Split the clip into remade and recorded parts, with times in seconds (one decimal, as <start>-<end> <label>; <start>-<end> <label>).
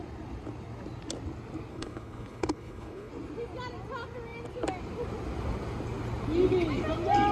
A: 0.0-1.7 recorded; 1.7-3.1 remade; 3.1-7.3 recorded